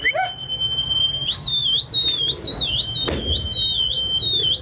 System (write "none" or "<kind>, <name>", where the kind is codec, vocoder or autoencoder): none